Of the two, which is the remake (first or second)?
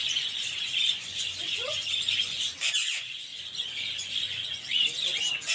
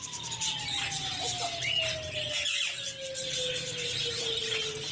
first